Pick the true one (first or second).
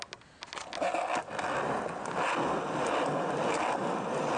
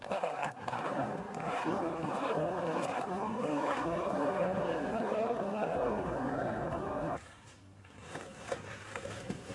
first